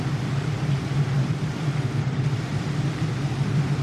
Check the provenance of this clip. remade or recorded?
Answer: remade